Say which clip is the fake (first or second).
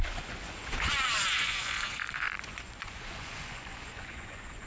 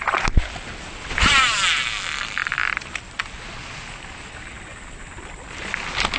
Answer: first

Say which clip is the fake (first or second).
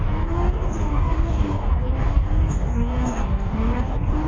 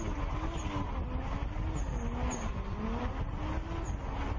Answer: first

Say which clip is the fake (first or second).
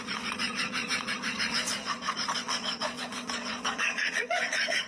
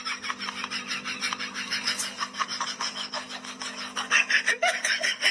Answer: first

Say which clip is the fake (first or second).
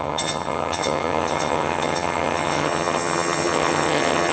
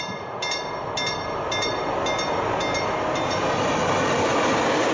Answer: first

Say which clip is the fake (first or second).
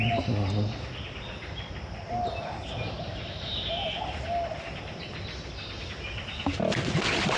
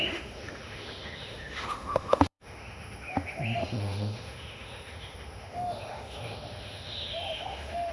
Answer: second